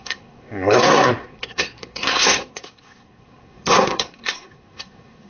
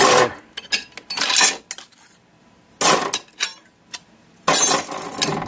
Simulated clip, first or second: first